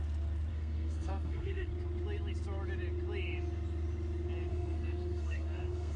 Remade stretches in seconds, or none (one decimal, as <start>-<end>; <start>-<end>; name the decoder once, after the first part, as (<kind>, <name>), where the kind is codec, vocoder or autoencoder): 0.5-1.7 (codec, SNAC); 4.5-6.0

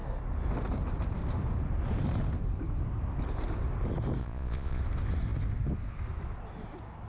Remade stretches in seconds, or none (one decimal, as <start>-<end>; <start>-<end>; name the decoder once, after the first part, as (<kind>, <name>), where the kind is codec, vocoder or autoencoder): 4.2-4.8 (vocoder, Vocos)